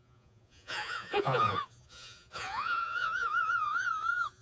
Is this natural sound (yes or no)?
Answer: no